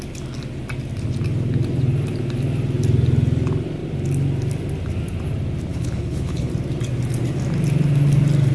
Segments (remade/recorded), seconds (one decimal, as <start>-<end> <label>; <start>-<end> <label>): 0.0-5.7 recorded; 5.7-6.5 remade; 6.5-8.5 recorded